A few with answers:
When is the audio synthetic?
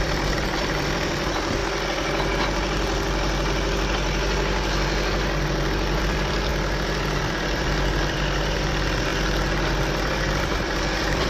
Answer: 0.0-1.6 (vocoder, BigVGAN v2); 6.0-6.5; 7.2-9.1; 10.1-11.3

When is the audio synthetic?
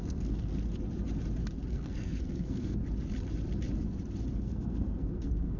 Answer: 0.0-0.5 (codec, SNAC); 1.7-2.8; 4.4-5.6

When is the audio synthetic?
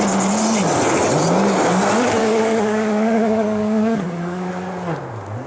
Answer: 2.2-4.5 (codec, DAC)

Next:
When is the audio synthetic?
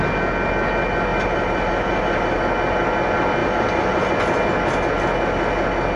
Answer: 1.1-2.4 (vocoder, BigVGAN v2); 3.4-4.1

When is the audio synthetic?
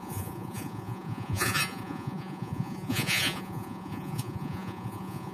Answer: 0.0-5.3 (vocoder, Vocos)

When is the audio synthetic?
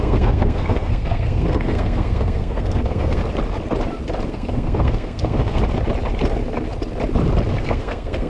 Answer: 0.0-3.2 (codec, SNAC); 4.3-5.6; 7.6-8.3